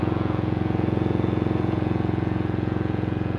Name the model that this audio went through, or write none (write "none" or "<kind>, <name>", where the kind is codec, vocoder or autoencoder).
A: vocoder, Vocos